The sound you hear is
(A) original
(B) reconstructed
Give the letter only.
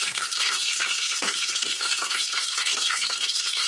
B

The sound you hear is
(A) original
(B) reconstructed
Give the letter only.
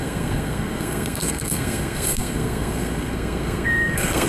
B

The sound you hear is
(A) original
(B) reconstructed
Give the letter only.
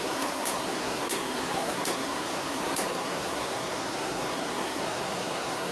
B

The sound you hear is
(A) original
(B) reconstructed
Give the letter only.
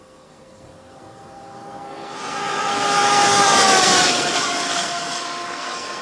B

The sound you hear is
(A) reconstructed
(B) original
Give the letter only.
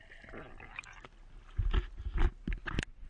B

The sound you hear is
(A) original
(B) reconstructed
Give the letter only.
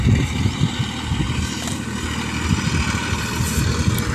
A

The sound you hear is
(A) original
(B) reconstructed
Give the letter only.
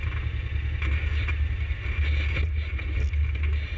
A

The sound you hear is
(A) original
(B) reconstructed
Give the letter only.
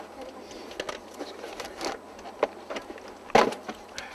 A